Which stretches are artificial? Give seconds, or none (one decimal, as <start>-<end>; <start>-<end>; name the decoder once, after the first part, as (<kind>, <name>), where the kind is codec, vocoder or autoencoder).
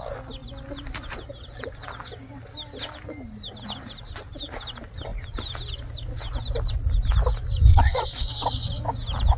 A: 7.7-8.3 (vocoder, Vocos)